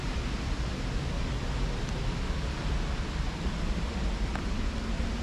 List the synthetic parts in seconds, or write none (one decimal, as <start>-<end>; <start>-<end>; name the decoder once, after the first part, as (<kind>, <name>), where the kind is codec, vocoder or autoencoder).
none